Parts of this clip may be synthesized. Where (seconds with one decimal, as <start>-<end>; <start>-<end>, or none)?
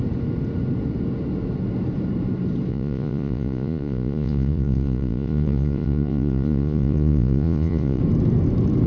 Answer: 2.7-8.0